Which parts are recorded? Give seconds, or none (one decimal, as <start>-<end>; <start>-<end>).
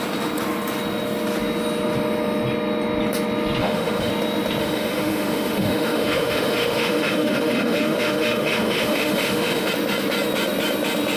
0.0-3.6; 4.1-4.6; 9.7-11.2